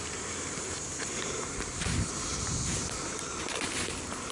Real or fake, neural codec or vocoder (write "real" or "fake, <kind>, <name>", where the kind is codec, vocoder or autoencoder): fake, vocoder, BigVGAN v2